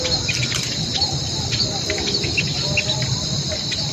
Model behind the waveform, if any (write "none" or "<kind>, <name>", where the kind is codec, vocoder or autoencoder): none